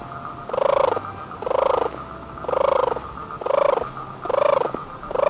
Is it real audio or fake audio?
real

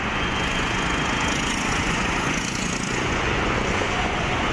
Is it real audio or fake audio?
fake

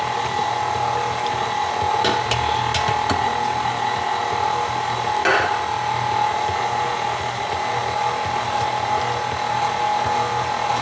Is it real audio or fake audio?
real